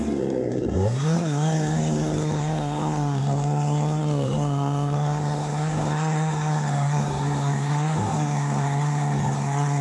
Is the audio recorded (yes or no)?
no